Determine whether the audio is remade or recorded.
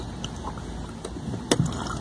recorded